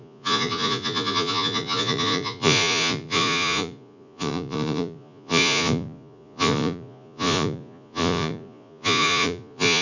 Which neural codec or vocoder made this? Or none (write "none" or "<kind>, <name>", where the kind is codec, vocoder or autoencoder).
vocoder, Vocos